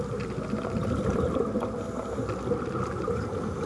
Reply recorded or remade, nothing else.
recorded